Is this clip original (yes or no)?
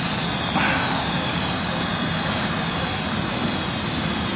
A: yes